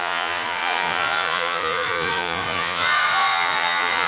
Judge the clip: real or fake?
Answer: fake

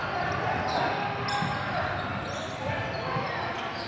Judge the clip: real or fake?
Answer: real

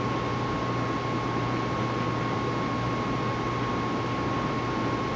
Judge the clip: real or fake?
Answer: real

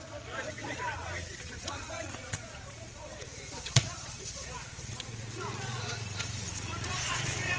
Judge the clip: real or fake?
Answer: fake